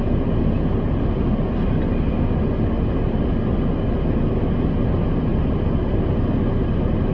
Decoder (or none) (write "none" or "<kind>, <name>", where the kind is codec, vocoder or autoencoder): none